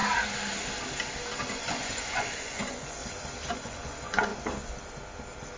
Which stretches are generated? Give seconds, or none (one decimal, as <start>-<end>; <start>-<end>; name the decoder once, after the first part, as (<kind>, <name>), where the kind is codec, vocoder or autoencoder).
1.5-3.0 (vocoder, Vocos); 3.5-4.3